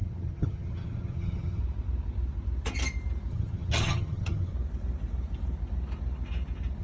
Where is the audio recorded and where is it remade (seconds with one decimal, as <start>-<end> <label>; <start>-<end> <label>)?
0.0-1.6 remade; 1.6-3.3 recorded; 3.3-4.5 remade; 4.5-6.8 recorded

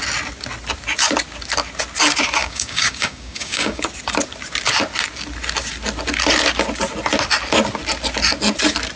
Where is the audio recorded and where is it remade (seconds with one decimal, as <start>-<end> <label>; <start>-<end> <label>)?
0.0-2.4 recorded; 2.4-3.8 remade; 3.8-9.0 recorded

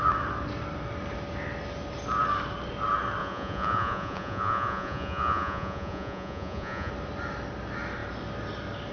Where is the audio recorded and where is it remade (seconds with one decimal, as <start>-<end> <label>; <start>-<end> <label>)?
0.0-3.2 recorded; 3.2-6.9 remade; 6.9-8.9 recorded

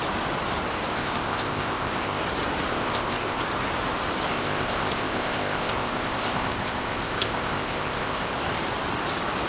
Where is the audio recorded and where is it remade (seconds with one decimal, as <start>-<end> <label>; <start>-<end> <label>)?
0.0-0.9 recorded; 0.9-2.2 remade; 2.2-2.7 recorded; 2.7-3.4 remade; 3.4-4.3 recorded; 4.3-8.3 remade; 8.3-9.5 recorded

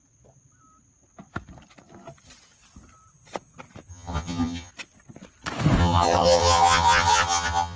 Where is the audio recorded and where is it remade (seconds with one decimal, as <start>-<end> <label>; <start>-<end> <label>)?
0.0-3.9 recorded; 3.9-4.7 remade; 4.7-5.8 recorded; 5.8-7.8 remade

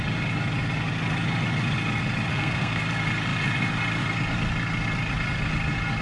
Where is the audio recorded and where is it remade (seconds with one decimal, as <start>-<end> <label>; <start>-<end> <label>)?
0.0-2.3 recorded; 2.3-2.8 remade; 2.8-6.0 recorded

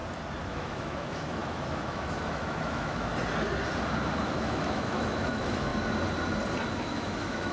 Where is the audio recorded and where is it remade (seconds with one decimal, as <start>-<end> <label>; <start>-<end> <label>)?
0.0-0.5 recorded; 0.5-3.1 remade; 3.1-4.2 recorded; 4.2-5.7 remade; 5.7-6.8 recorded; 6.8-7.5 remade